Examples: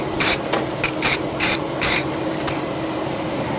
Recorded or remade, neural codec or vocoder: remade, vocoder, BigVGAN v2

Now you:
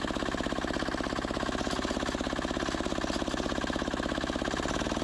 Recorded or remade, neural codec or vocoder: recorded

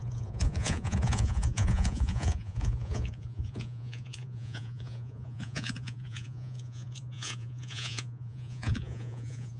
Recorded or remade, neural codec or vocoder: remade, vocoder, Vocos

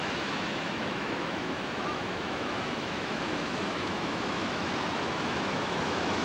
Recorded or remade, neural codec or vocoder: remade, autoencoder, DAC-VAE